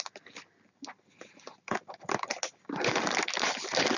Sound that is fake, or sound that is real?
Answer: real